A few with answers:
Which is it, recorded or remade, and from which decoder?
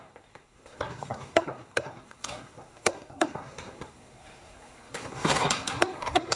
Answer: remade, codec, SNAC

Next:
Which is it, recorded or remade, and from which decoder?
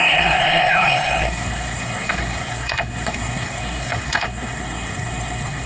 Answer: remade, codec, SNAC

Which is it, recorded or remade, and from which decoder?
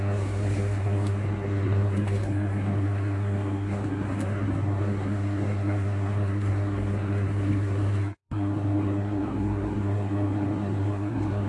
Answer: remade, codec, SNAC